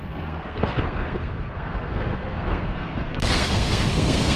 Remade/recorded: remade